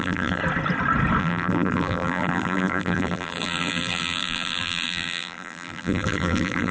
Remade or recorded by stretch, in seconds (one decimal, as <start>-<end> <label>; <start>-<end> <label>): 0.0-0.4 remade; 0.4-1.2 recorded; 1.2-6.7 remade